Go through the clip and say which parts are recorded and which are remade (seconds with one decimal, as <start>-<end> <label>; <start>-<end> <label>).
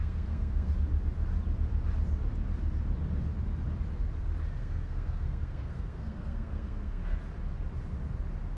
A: 0.0-0.7 remade; 0.7-4.6 recorded; 4.6-7.2 remade; 7.2-8.6 recorded